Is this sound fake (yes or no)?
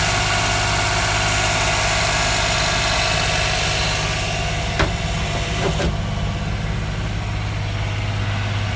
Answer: no